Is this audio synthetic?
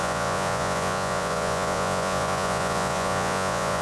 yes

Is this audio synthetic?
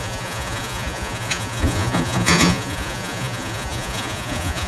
yes